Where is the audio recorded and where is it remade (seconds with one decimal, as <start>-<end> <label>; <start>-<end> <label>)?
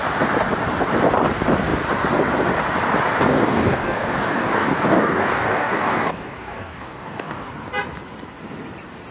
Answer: 0.0-3.3 recorded; 3.3-7.5 remade; 7.5-9.1 recorded